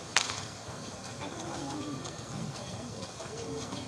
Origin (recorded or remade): remade